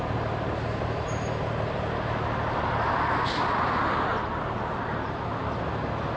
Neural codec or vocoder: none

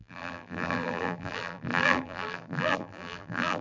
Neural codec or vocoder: vocoder, BigVGAN v2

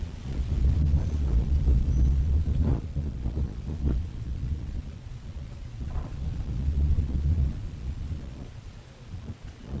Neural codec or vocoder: vocoder, Vocos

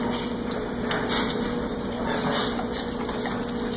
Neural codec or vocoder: none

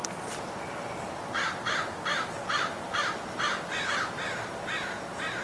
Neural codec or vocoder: none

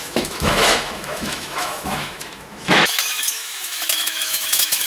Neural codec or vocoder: autoencoder, DAC-VAE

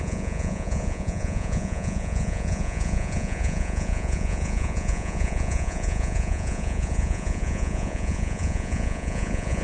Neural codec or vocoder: vocoder, Vocos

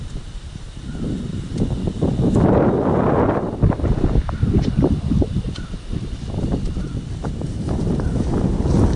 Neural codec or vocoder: none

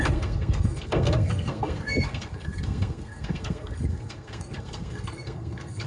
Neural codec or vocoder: codec, SNAC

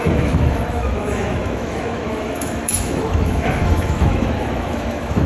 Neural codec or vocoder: autoencoder, DAC-VAE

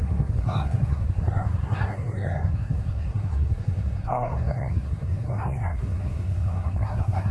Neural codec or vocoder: codec, SNAC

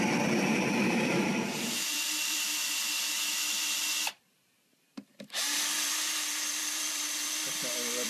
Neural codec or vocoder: vocoder, BigVGAN v2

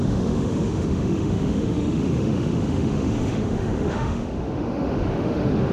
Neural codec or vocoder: autoencoder, DAC-VAE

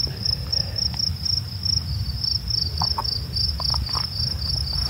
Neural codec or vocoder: none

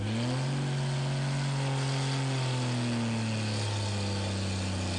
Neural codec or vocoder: none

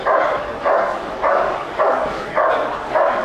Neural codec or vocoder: codec, DAC